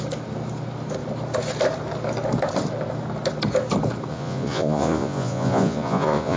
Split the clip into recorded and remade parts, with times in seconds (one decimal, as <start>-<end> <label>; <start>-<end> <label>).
0.0-4.1 recorded; 4.1-6.4 remade